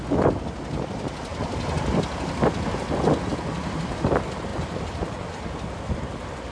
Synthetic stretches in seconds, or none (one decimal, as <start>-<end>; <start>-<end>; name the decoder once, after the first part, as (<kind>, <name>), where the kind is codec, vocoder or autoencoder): none